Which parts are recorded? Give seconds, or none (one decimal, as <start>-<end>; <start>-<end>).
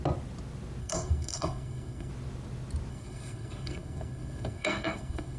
0.0-0.8; 2.1-2.9